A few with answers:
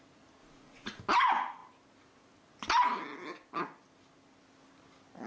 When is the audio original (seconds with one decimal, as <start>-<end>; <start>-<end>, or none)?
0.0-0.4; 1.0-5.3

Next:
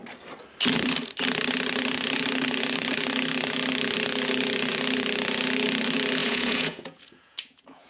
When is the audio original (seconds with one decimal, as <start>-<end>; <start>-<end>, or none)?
0.0-6.2

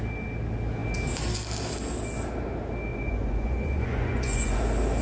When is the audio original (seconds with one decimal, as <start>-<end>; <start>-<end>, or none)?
0.0-2.9; 4.6-5.0

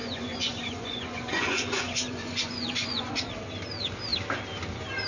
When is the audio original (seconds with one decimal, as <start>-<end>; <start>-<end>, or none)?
3.1-5.1

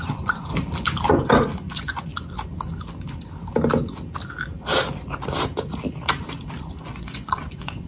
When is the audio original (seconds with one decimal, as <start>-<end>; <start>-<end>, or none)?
0.5-1.1; 2.1-6.8

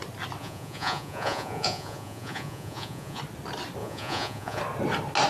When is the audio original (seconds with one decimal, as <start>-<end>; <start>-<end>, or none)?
0.0-0.4; 3.2-3.8; 4.6-5.3

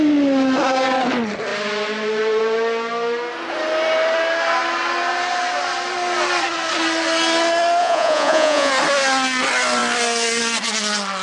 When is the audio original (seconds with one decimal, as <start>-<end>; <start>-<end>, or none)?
0.0-7.8; 8.7-11.2

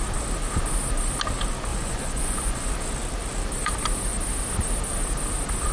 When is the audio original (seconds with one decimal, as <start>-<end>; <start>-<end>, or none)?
0.0-1.7; 2.7-5.7